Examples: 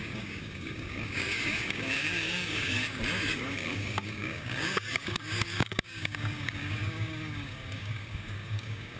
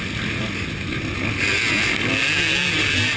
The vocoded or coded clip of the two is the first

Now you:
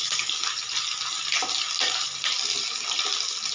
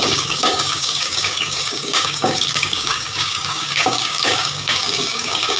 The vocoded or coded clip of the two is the second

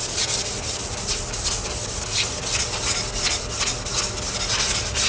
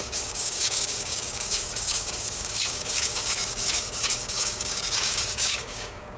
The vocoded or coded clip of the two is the second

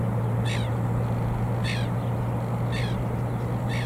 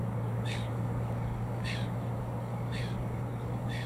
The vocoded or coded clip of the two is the second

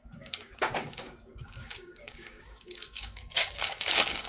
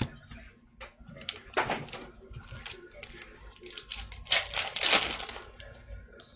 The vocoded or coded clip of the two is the first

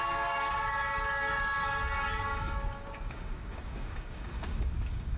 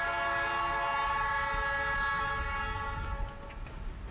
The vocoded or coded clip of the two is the first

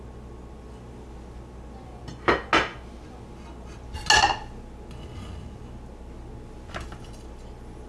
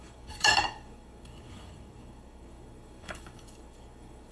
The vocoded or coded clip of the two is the second